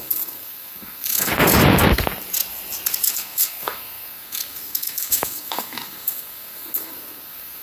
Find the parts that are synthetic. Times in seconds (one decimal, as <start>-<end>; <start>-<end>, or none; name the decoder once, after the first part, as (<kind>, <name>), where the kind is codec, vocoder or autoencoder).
0.0-1.3 (codec, SNAC); 3.1-7.6

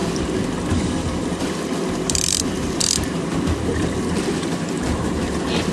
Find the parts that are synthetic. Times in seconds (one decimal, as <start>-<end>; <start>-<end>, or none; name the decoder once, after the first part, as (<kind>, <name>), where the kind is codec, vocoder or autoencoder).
0.0-5.7 (vocoder, BigVGAN v2)

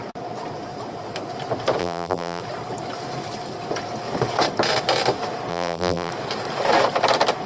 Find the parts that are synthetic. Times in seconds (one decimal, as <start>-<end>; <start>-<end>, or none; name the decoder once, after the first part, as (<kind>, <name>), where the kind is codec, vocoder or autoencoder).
1.8-2.4 (vocoder, BigVGAN v2); 5.5-6.1

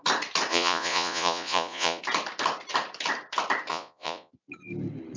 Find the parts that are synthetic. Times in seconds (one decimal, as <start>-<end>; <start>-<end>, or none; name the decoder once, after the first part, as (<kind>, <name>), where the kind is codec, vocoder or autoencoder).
0.5-2.0 (vocoder, Vocos); 3.7-4.3

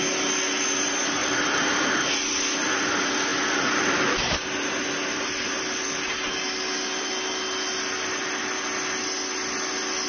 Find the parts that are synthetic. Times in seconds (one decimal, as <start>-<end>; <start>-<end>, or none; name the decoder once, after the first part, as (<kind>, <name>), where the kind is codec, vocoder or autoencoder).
1.2-2.1 (vocoder, BigVGAN v2)

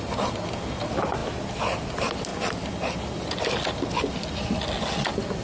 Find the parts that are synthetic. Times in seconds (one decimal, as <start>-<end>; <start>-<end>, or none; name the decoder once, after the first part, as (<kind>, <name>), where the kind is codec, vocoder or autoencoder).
none